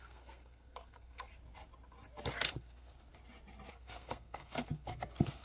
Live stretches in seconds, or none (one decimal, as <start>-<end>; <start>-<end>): 1.3-2.5; 3.1-3.7